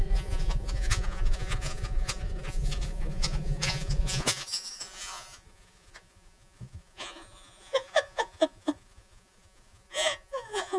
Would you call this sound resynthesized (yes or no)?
yes